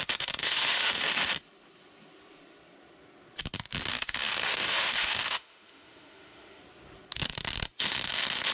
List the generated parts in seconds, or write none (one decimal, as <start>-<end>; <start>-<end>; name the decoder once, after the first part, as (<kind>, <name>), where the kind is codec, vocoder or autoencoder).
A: 0.4-1.0 (autoencoder, DAC-VAE); 3.9-6.6